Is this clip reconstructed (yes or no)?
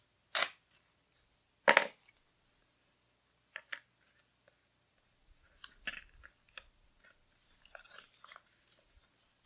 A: no